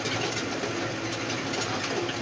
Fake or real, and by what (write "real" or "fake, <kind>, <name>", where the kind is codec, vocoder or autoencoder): real